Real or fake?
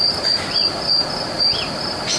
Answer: real